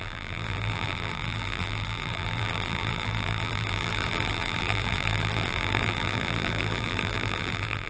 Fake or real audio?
fake